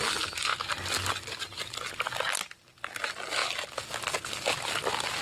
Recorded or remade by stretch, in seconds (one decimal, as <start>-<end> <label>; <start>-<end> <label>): 0.0-5.2 recorded